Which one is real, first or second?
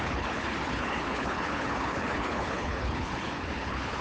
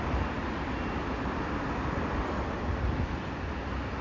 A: second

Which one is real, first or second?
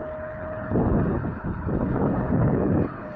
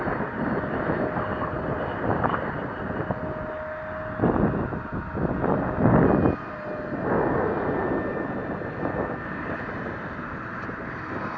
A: second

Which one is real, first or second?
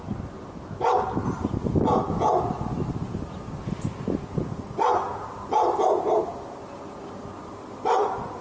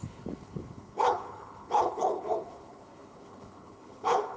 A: first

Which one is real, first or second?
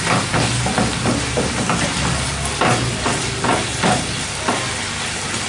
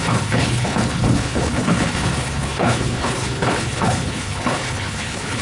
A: first